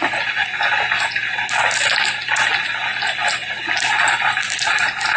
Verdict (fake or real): real